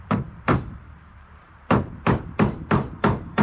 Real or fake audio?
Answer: fake